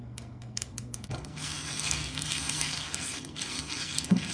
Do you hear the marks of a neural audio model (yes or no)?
yes